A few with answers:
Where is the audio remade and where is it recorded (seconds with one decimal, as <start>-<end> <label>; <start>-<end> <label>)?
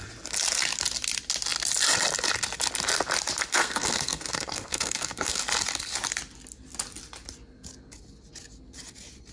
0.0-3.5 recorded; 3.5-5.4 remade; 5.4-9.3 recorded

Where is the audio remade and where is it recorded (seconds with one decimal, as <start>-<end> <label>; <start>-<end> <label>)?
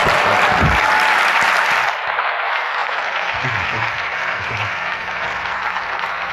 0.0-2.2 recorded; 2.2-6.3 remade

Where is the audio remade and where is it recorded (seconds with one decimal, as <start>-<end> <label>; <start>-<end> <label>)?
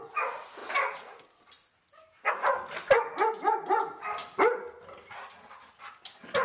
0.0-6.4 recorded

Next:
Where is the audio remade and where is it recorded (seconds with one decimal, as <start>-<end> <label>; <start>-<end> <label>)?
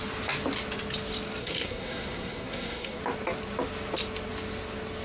0.0-1.4 recorded; 1.4-3.0 remade; 3.0-5.0 recorded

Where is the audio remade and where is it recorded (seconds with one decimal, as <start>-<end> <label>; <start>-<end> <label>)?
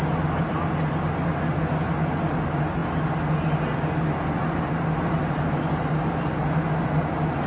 0.0-7.5 recorded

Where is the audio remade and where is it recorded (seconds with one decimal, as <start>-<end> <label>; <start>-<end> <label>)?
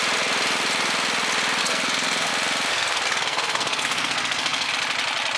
0.0-1.6 recorded; 1.6-2.3 remade; 2.3-2.7 recorded; 2.7-4.7 remade; 4.7-5.4 recorded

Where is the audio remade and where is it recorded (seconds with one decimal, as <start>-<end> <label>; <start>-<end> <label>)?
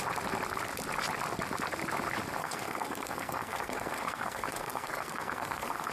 0.0-2.4 recorded; 2.4-5.9 remade